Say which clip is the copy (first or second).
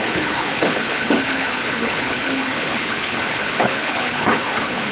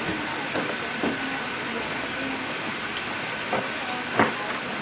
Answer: first